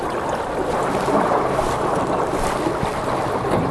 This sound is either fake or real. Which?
real